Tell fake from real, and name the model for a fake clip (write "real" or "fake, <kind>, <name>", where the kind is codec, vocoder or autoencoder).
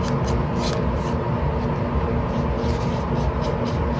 real